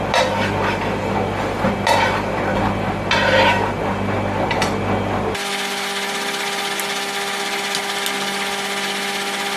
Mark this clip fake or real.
real